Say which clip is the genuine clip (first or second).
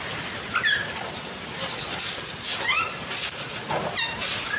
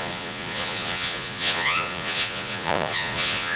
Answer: first